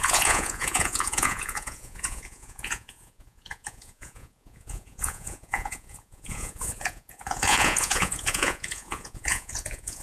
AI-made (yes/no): yes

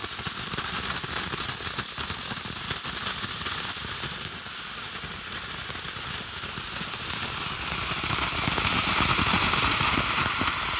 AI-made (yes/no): no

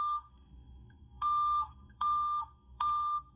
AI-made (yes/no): yes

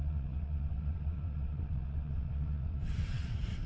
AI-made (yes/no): yes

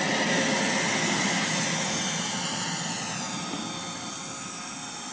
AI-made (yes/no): no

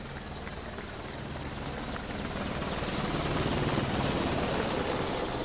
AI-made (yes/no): no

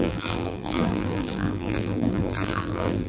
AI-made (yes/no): yes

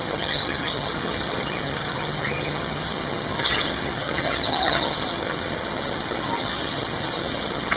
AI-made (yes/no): yes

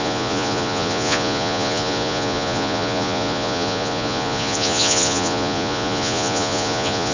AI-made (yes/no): yes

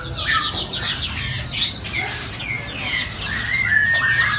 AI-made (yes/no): no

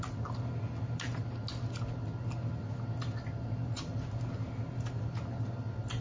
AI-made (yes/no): no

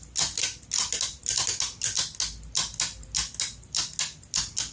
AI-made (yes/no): no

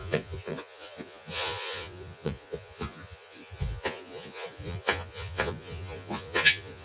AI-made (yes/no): yes